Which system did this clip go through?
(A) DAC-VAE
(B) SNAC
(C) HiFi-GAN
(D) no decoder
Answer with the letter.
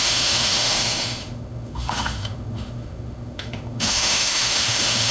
A